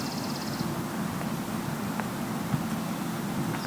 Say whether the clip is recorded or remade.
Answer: recorded